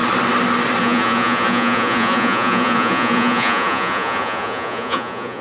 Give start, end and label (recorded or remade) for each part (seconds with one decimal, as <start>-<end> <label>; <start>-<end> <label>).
0.0-0.8 recorded; 0.8-5.4 remade